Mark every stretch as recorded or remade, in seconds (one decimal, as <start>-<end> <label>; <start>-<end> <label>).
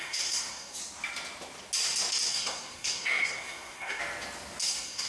0.0-0.8 remade; 0.8-2.3 recorded; 2.3-4.0 remade; 4.0-4.6 recorded; 4.6-5.1 remade